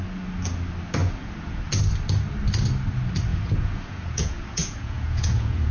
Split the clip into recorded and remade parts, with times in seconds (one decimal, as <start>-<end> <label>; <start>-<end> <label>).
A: 0.0-1.0 recorded; 1.0-1.6 remade; 1.6-3.3 recorded; 3.3-5.7 remade

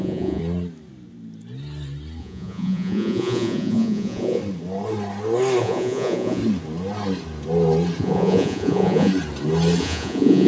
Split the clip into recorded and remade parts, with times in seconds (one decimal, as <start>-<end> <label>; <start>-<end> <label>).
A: 0.0-0.4 remade; 0.4-2.2 recorded; 2.2-4.4 remade; 4.4-5.6 recorded; 5.6-6.4 remade; 6.4-8.0 recorded; 8.0-9.1 remade; 9.1-9.8 recorded; 9.8-10.5 remade

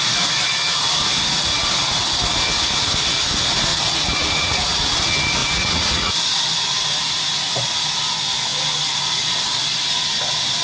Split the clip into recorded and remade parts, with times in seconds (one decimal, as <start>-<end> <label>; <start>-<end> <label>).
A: 0.0-3.7 recorded; 3.7-4.9 remade; 4.9-5.4 recorded; 5.4-6.1 remade; 6.1-10.6 recorded

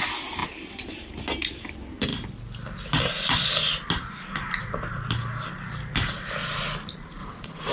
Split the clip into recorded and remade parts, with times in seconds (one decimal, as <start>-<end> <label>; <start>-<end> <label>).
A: 0.0-7.2 recorded; 7.2-7.7 remade

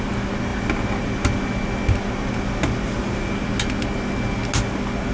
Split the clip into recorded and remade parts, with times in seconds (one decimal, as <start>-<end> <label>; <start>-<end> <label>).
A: 0.0-5.1 recorded